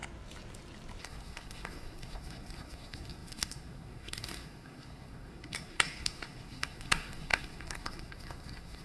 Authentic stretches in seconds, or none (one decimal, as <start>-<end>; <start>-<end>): 0.0-1.0